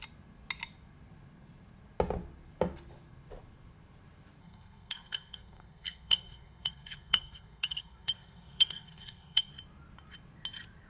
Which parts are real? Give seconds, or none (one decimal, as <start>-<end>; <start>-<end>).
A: 0.0-4.4; 9.5-10.9